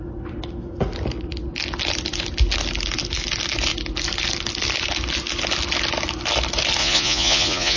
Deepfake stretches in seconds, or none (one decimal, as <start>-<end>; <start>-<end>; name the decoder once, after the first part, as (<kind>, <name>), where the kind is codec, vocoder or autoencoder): 6.8-7.8 (vocoder, Vocos)